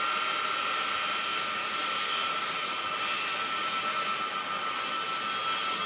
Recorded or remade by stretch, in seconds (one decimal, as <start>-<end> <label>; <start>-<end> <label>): 0.0-5.9 recorded